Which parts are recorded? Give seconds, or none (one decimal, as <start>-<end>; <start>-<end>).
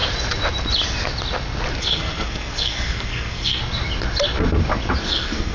0.0-1.8; 3.6-5.0